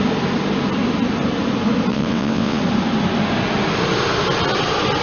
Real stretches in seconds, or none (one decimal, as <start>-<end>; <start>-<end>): 0.0-1.9; 2.6-5.0